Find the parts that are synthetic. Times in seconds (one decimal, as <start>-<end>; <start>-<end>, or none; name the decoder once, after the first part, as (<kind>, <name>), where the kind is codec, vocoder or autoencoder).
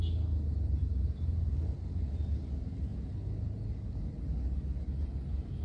none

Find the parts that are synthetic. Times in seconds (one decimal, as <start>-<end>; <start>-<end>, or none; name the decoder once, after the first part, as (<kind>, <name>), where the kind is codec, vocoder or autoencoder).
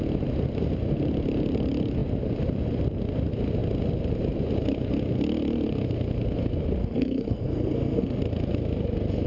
6.8-8.2 (codec, SNAC)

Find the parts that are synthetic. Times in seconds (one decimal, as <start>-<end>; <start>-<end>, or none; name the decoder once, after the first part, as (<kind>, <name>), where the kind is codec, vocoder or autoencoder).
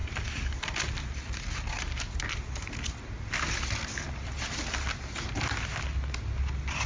none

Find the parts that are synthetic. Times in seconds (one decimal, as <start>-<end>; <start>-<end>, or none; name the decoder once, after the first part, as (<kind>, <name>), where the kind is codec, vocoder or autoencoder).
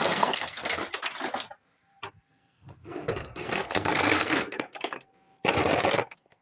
0.0-0.8 (codec, SNAC); 2.1-5.1; 5.9-6.4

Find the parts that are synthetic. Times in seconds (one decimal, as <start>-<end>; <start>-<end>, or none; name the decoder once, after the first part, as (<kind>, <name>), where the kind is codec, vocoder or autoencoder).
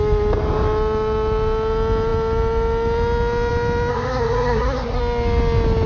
3.9-5.0 (codec, SNAC)